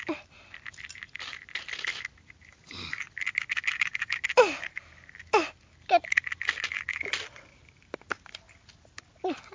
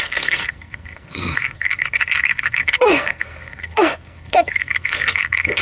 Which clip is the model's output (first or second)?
second